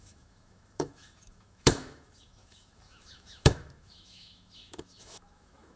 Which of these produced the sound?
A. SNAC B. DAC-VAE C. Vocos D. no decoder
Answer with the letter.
B